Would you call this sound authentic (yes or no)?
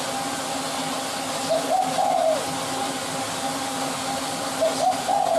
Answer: yes